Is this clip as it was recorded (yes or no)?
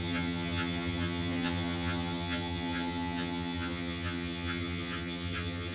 no